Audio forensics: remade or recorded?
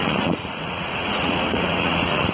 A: remade